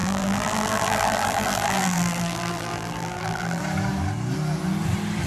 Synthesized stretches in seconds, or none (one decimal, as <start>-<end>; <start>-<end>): 0.0-3.6